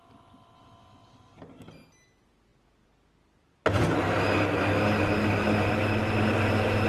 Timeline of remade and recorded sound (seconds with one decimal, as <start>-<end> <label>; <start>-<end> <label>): 0.0-6.9 recorded